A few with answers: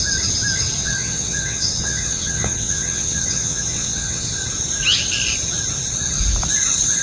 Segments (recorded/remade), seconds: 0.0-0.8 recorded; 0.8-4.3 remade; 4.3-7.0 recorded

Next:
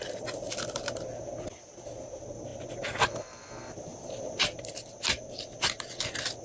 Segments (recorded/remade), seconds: 0.0-6.4 recorded

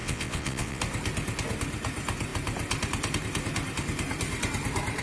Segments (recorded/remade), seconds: 0.0-0.8 remade; 0.8-5.0 recorded

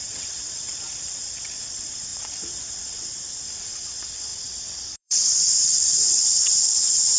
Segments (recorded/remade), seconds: 0.0-3.1 remade; 3.1-3.6 recorded; 3.6-7.2 remade

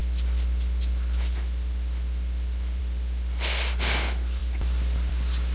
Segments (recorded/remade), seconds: 0.0-5.5 recorded

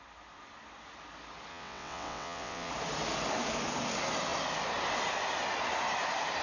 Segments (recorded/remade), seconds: 0.0-1.5 recorded; 1.5-2.7 remade; 2.7-6.4 recorded

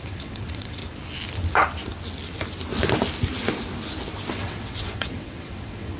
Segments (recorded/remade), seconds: 0.0-0.8 remade; 0.8-4.3 recorded; 4.3-6.0 remade